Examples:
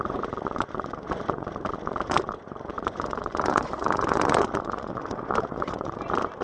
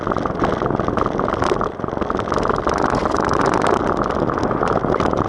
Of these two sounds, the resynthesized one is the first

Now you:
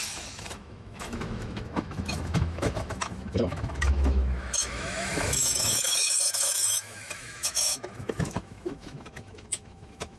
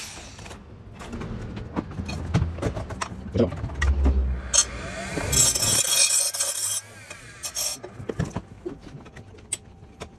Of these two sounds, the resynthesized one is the first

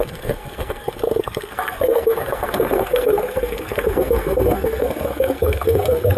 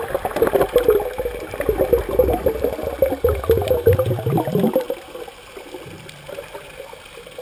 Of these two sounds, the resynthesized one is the first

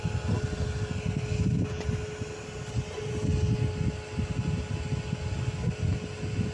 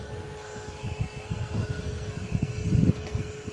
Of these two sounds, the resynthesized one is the second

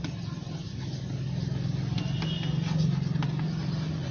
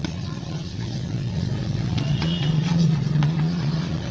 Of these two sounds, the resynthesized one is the second